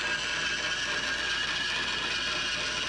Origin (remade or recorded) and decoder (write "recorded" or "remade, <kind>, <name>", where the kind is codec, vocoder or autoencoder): recorded